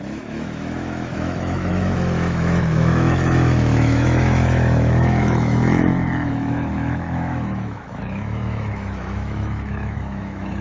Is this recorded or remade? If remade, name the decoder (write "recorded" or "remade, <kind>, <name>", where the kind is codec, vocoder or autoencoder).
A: remade, autoencoder, DAC-VAE